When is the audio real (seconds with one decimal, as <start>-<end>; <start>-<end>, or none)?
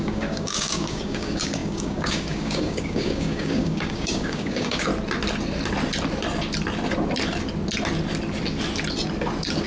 4.9-9.7